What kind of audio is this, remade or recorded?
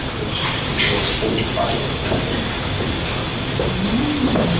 recorded